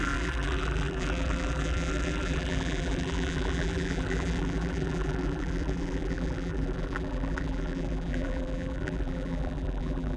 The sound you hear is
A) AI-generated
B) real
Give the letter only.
A